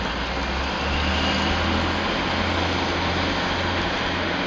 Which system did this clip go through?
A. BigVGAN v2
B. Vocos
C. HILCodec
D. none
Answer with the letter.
D